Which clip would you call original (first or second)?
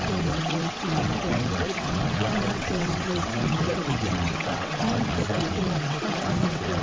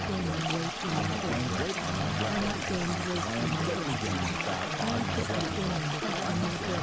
second